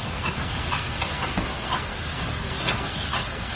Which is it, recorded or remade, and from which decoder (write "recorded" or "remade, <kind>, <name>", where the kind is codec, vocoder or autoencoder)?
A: remade, codec, SNAC